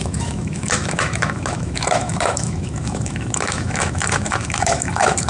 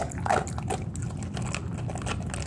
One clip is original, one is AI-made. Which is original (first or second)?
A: second